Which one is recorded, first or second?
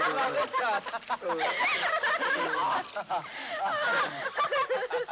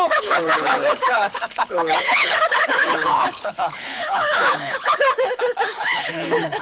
first